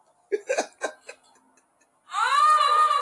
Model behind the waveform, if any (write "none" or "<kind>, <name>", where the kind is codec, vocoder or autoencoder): none